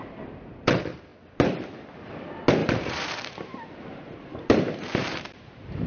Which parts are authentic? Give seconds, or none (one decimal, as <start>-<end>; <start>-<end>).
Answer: 0.0-2.6

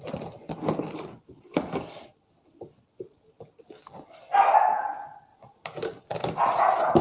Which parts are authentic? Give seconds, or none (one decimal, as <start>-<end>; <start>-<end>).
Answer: 0.0-7.0

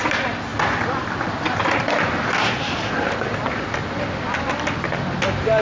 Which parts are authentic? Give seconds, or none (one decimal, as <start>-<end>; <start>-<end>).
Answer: 0.0-5.6

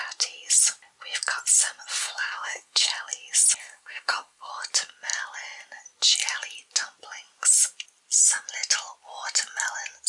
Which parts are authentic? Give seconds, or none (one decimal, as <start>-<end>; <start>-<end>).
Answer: 0.0-2.0; 2.9-3.6; 4.5-10.1